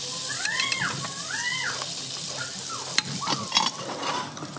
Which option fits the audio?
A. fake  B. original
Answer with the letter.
B